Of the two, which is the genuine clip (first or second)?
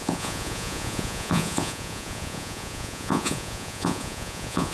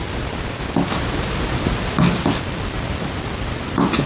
second